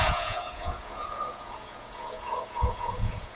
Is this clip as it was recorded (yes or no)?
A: no